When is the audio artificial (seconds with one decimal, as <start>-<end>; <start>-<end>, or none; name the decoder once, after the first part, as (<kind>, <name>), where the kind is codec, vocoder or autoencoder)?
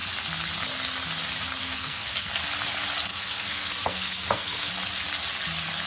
1.6-2.3 (codec, SNAC); 3.1-4.7